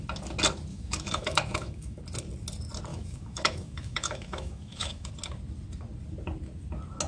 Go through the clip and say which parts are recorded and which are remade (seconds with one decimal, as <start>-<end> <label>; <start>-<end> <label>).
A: 0.0-0.7 recorded; 0.7-2.0 remade; 2.0-2.9 recorded; 2.9-5.1 remade; 5.1-7.1 recorded